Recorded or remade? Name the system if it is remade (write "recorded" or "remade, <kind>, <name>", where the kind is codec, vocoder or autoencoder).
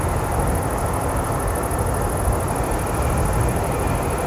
recorded